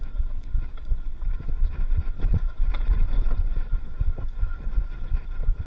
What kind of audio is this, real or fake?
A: fake